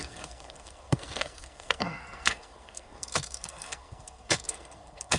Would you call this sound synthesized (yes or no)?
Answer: yes